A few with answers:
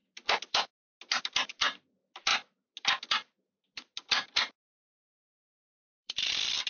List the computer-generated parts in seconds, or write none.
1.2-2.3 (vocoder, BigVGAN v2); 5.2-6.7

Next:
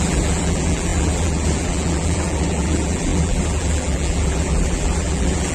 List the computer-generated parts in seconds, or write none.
0.0-5.5 (vocoder, BigVGAN v2)